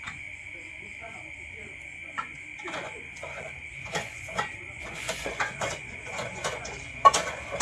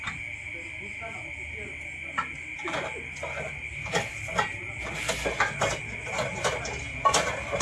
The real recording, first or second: second